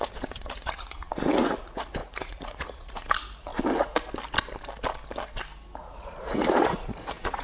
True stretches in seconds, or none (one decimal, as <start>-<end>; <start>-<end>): 3.5-5.8